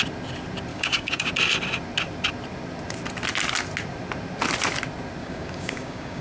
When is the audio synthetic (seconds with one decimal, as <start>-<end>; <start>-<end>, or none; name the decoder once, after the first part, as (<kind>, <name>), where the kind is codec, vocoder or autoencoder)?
0.7-1.3 (codec, DAC); 5.2-6.2